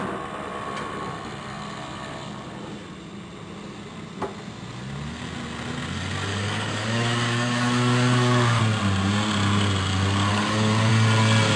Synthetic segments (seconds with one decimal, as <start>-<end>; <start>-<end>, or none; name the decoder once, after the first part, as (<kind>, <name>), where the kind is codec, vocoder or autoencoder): 6.3-8.6 (codec, DAC); 10.3-10.9